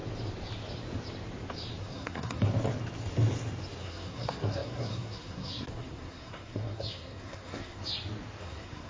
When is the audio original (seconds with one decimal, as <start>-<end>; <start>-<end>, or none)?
0.0-1.8; 2.5-3.8; 7.8-8.4